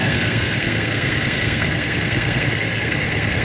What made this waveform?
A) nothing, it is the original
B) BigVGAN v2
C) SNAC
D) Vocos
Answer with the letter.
C